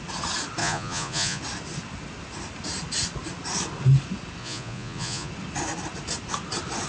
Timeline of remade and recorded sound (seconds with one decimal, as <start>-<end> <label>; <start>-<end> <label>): 0.0-0.6 recorded; 0.6-1.4 remade; 1.4-4.4 recorded; 4.4-5.3 remade; 5.3-6.9 recorded